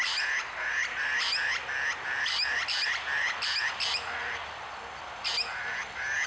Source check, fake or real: real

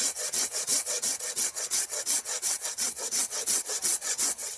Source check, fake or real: fake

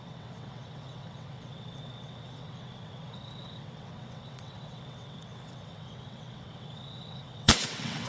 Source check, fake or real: fake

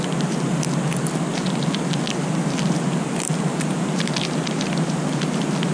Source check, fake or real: real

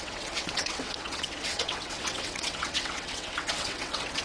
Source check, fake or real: fake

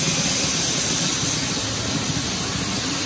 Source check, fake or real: real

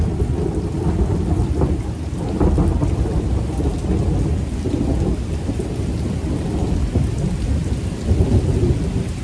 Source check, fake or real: real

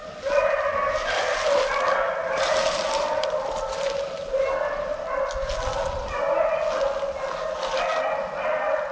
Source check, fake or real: real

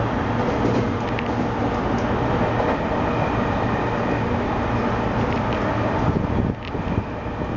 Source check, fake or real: real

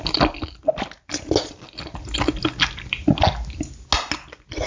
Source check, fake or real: real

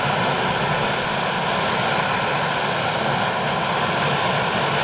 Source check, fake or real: real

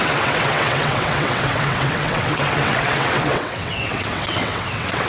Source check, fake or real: fake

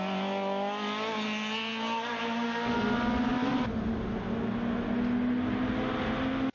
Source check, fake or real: real